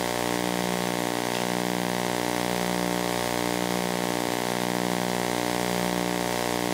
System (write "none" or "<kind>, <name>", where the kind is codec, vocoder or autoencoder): none